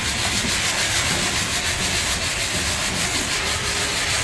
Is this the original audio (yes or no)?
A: yes